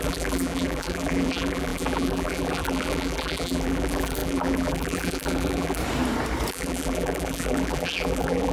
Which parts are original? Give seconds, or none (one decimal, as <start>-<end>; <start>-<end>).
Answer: 5.8-6.5